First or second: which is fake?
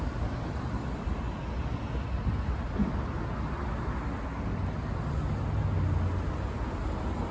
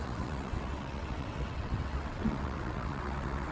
second